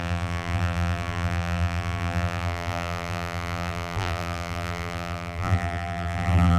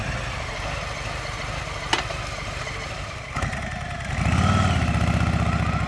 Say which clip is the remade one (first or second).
first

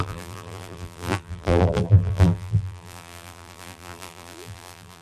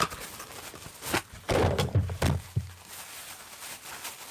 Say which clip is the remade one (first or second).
first